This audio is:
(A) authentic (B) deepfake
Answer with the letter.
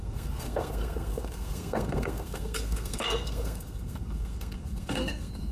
B